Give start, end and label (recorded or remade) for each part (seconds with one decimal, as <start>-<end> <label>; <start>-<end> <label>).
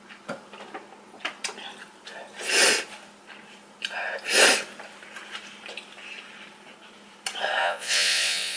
0.0-7.6 recorded; 7.6-8.6 remade